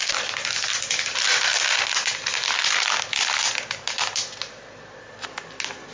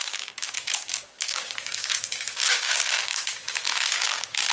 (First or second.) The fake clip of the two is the second